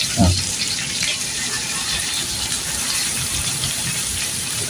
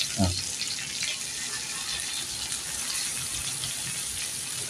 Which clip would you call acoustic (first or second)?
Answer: second